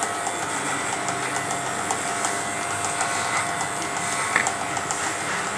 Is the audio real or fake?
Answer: real